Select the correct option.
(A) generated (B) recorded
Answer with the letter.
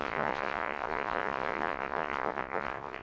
A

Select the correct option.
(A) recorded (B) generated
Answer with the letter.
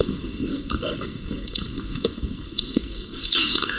B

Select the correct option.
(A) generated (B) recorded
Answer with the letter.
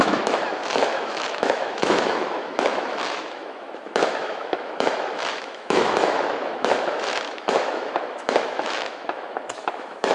A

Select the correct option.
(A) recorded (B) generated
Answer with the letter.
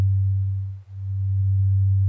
A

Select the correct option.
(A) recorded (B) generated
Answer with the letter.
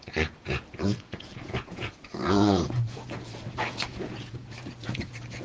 B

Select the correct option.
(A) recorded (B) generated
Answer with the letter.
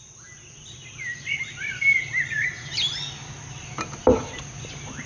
A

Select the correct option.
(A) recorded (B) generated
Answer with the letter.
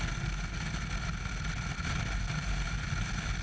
A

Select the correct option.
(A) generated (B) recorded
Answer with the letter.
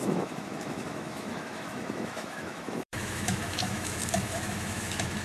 A